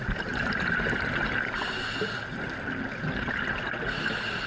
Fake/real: real